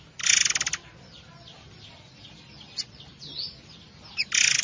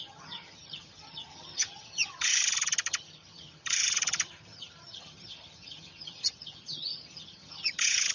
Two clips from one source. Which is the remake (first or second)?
second